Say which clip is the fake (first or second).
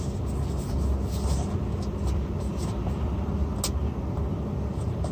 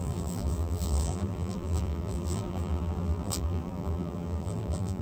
second